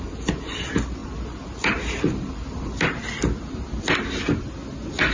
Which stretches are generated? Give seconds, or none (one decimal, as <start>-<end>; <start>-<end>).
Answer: none